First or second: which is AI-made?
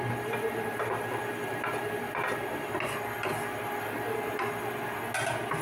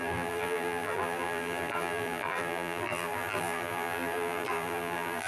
second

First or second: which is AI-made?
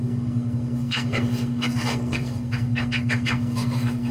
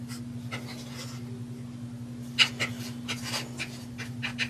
first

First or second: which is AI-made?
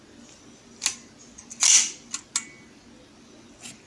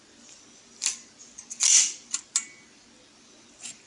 second